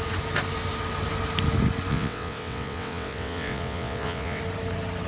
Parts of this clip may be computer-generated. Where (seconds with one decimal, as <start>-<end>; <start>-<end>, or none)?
1.9-4.4